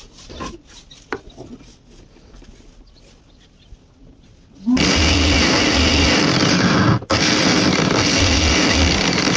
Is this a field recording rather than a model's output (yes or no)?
yes